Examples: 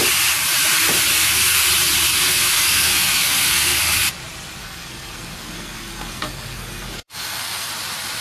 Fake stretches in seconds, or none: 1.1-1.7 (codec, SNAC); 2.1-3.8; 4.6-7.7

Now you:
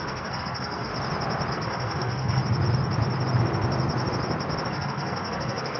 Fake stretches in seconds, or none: 0.0-0.9 (codec, SNAC); 1.5-2.4; 4.7-5.8

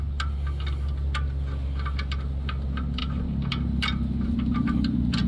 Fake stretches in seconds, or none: none

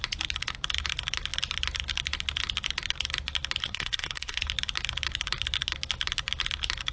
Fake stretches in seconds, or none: 3.6-4.4 (codec, SNAC)